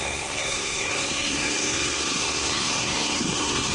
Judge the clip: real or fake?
fake